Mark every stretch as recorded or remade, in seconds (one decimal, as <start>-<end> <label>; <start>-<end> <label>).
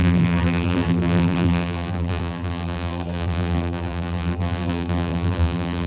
0.0-5.9 remade